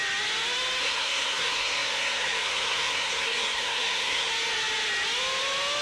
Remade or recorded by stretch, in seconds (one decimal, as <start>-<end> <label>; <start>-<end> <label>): 0.0-0.8 recorded; 0.8-4.3 remade; 4.3-5.8 recorded